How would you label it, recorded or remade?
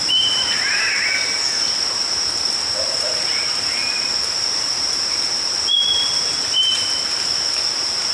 remade